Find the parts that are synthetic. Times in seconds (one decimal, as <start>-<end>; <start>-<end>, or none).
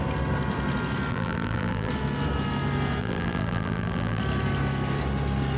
1.1-1.9; 3.0-4.2